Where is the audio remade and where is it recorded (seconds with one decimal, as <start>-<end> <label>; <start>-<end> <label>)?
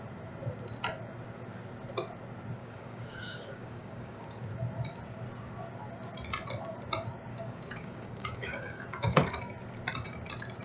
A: 0.0-2.6 recorded; 2.6-4.4 remade; 4.4-7.3 recorded; 7.3-9.4 remade; 9.4-10.6 recorded